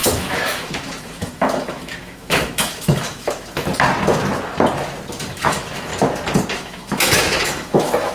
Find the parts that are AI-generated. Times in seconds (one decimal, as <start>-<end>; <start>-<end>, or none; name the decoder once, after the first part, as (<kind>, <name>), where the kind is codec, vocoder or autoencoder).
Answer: 0.0-3.7 (autoencoder, DAC-VAE); 5.1-5.9; 6.5-8.1